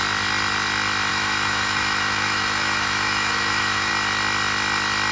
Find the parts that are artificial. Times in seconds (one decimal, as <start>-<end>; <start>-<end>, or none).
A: 1.1-3.9